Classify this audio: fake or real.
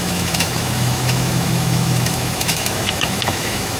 fake